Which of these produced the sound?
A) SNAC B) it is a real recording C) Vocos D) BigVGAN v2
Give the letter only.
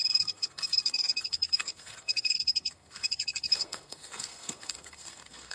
A